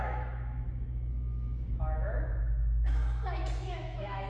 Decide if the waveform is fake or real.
fake